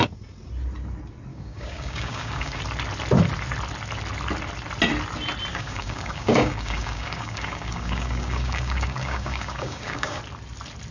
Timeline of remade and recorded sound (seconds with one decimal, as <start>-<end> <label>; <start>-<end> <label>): 0.0-1.3 recorded; 1.3-2.6 remade; 2.6-5.5 recorded; 5.5-10.2 remade; 10.2-10.9 recorded

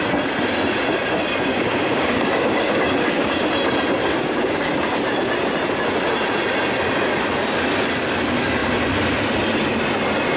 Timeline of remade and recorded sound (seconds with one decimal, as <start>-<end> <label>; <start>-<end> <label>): 0.0-1.5 recorded; 1.5-3.5 remade; 3.5-4.0 recorded; 4.0-4.7 remade; 4.7-10.4 recorded

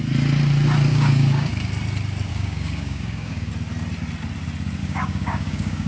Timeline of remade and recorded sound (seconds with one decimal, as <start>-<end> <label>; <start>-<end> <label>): 0.0-0.9 recorded; 0.9-1.5 remade; 1.5-2.3 recorded; 2.3-3.5 remade; 3.5-4.8 recorded; 4.8-5.9 remade

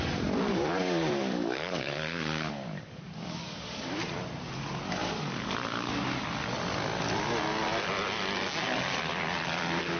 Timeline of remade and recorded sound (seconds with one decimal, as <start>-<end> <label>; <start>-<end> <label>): 0.0-0.5 recorded; 0.5-4.0 remade; 4.0-5.0 recorded; 5.0-5.9 remade; 5.9-10.0 recorded